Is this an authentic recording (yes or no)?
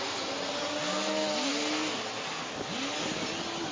yes